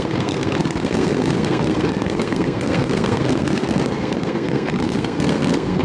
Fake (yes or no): yes